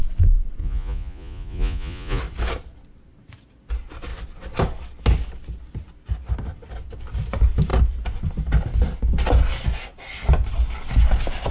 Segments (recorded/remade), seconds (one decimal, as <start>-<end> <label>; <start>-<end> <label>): 0.0-0.6 recorded; 0.6-2.2 remade; 2.2-11.5 recorded